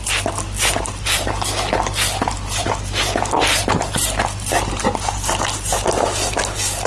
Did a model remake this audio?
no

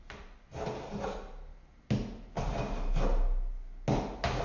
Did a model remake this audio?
no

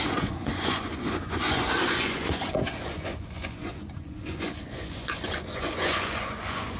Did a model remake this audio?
yes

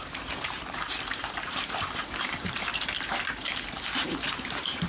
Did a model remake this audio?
yes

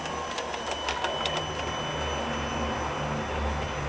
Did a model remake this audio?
no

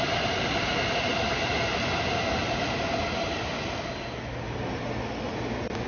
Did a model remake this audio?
no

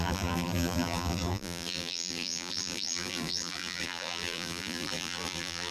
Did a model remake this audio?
yes